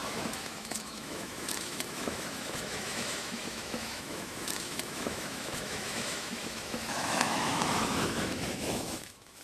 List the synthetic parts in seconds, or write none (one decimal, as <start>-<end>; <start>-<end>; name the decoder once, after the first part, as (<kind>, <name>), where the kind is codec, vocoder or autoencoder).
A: 0.0-9.4 (autoencoder, DAC-VAE)

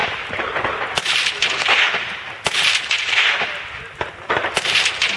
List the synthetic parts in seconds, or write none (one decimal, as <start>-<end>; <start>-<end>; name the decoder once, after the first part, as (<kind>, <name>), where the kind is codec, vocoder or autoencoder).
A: none

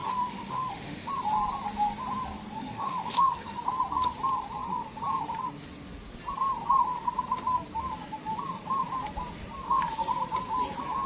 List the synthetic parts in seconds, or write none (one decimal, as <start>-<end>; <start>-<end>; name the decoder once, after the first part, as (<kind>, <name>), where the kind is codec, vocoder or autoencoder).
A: 0.0-1.1 (autoencoder, DAC-VAE); 2.6-3.6

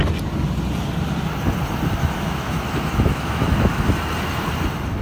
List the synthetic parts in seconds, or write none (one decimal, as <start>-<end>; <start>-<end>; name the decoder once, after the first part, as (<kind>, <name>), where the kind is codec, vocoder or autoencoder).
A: 2.0-3.8 (autoencoder, DAC-VAE)

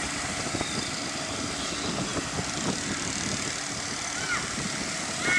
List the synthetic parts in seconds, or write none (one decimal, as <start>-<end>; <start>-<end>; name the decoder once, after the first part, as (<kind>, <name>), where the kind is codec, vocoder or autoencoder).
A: none

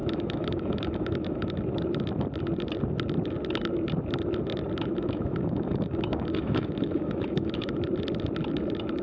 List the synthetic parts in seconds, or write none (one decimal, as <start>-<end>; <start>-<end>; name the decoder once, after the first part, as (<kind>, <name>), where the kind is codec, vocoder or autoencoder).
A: 0.0-1.6 (autoencoder, DAC-VAE); 4.9-7.7

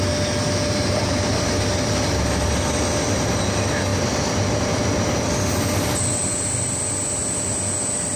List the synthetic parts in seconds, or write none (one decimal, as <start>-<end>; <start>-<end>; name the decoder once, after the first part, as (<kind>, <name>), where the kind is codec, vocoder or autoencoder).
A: none

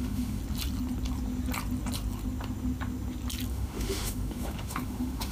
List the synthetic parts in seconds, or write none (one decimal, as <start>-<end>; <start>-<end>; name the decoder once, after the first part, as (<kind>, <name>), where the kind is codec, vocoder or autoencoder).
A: 0.0-0.4 (autoencoder, DAC-VAE); 3.5-5.3